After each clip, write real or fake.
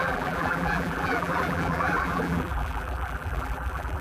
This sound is fake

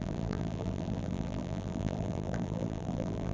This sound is fake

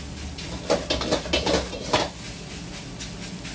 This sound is real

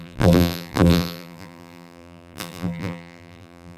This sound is fake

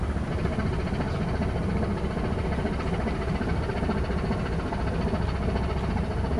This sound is real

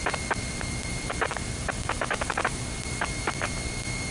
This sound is fake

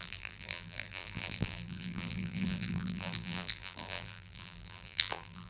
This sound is fake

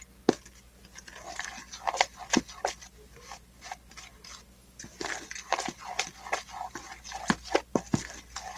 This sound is real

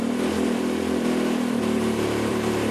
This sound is fake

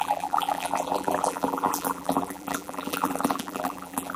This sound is fake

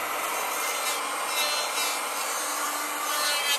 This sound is fake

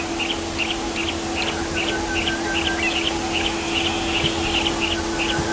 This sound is real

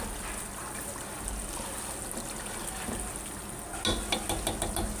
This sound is real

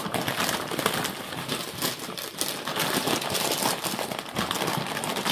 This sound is real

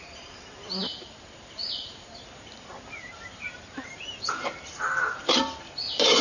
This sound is fake